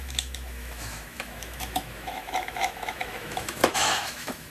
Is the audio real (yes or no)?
no